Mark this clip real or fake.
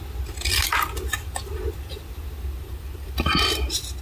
real